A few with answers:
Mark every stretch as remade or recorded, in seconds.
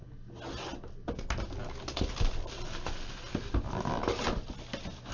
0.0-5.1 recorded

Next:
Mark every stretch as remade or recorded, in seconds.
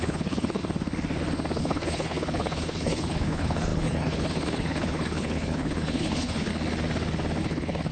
0.0-0.6 remade; 0.6-1.6 recorded; 1.6-6.5 remade; 6.5-7.4 recorded; 7.4-7.9 remade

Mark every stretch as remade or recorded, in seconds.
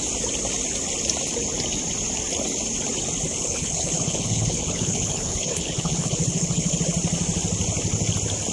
0.0-3.3 recorded; 3.3-6.8 remade; 6.8-8.5 recorded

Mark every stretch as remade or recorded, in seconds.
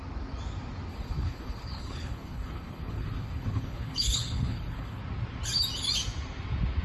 0.0-0.9 recorded; 0.9-5.0 remade; 5.0-6.8 recorded